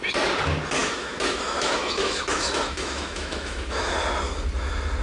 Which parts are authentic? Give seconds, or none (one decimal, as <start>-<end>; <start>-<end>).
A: 0.0-0.8; 3.8-5.0